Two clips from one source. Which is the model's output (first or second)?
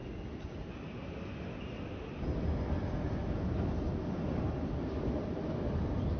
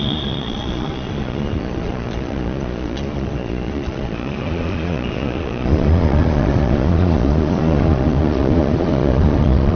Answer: second